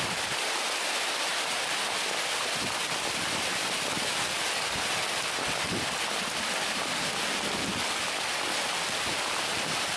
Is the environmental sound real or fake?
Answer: real